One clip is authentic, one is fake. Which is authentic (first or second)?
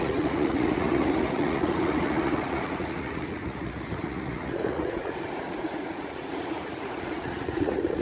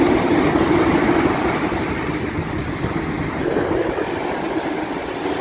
second